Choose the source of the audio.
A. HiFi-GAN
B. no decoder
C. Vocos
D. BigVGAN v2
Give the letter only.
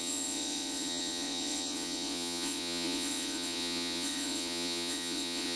C